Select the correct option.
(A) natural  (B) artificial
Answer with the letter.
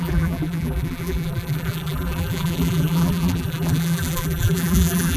B